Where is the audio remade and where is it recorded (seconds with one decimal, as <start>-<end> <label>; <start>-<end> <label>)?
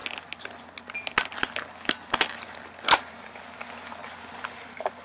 0.0-3.0 recorded; 3.0-3.4 remade; 3.4-4.3 recorded; 4.3-5.0 remade